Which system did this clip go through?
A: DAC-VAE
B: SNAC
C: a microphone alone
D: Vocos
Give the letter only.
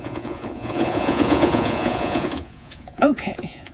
D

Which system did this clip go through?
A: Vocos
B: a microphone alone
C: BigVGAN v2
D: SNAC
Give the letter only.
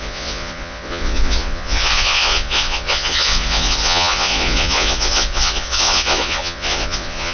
A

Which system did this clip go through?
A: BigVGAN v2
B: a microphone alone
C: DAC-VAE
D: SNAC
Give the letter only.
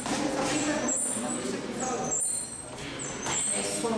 B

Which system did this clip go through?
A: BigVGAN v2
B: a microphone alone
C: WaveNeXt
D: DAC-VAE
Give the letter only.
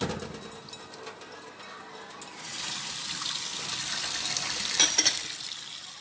B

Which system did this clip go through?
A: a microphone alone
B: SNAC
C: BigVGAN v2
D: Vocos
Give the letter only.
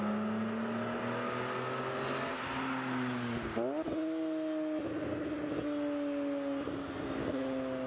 A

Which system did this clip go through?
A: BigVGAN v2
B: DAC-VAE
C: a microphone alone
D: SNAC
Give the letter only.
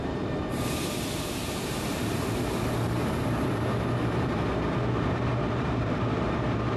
A